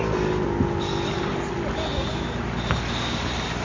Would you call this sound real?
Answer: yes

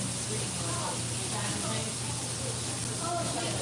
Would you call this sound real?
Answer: yes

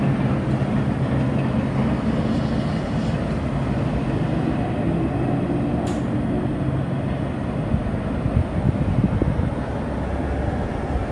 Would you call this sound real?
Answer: yes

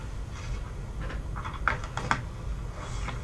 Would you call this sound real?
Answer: yes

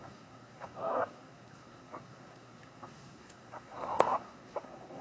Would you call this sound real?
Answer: no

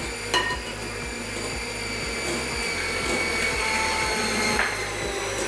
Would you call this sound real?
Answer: yes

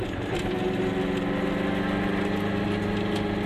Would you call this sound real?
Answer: yes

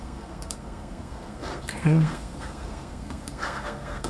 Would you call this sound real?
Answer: no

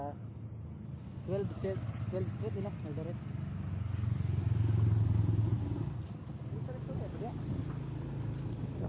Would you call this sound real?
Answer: yes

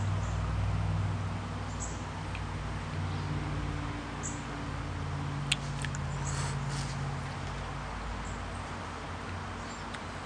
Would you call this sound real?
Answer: yes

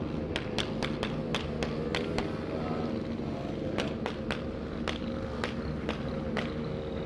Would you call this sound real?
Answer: yes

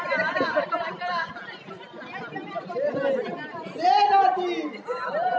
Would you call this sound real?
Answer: yes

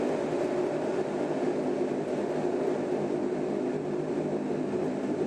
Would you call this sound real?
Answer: yes